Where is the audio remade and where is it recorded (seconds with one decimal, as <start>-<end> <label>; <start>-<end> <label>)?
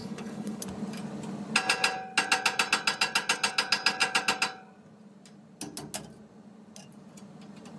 0.0-0.6 remade; 0.6-7.8 recorded